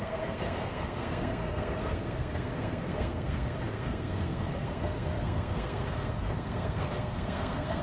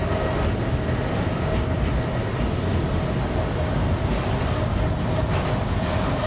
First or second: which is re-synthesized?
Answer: first